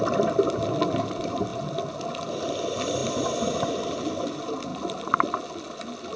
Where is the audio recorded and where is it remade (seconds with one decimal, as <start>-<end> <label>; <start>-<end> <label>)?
0.0-6.2 recorded